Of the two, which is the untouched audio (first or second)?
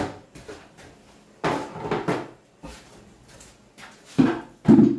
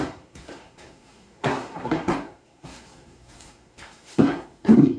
first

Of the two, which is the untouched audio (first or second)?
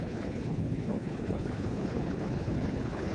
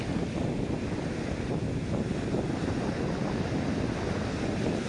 second